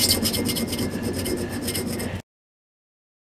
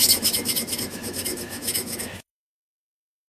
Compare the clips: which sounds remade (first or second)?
second